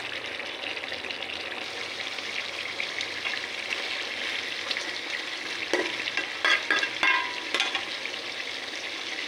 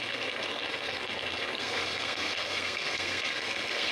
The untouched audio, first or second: first